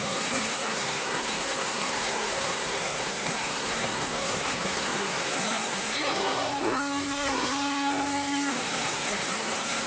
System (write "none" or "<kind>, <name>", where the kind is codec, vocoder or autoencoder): codec, SNAC